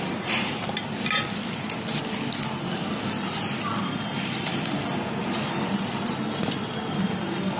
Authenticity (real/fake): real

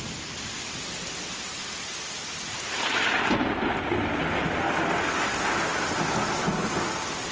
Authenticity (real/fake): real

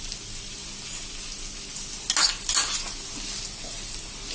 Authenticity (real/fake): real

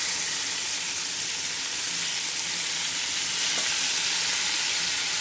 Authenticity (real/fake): real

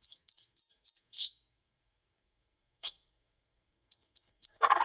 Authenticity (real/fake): fake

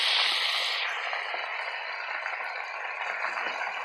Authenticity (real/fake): real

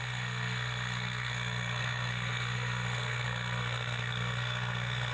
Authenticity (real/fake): fake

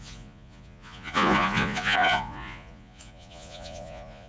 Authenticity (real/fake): fake